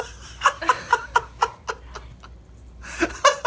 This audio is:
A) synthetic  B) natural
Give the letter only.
B